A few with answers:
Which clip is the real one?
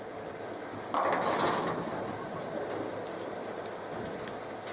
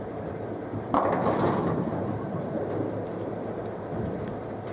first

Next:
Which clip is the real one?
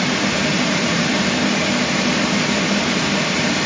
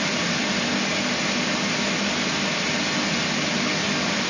second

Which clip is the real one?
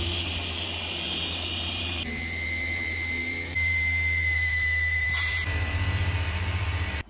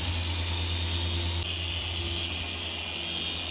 second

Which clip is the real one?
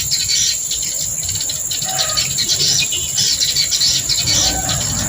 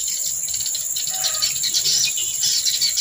first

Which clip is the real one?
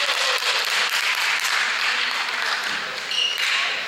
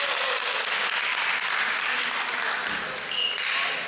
second